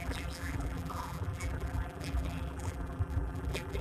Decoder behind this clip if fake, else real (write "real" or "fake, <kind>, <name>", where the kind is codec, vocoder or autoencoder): fake, vocoder, BigVGAN v2